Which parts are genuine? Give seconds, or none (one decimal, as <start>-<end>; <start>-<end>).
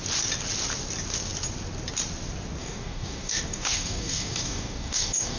0.0-2.6